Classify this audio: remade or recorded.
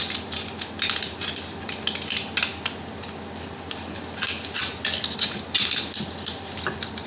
recorded